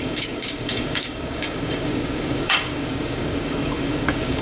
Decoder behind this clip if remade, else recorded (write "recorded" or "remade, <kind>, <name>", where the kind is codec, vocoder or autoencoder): remade, codec, DAC